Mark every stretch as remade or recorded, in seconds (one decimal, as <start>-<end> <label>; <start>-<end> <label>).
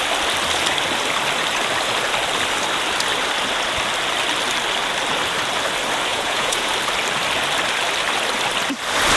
0.0-6.1 recorded; 6.1-6.7 remade; 6.7-9.2 recorded